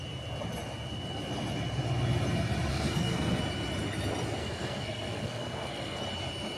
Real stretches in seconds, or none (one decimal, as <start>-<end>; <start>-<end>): 0.0-2.7; 3.4-4.4; 6.0-6.6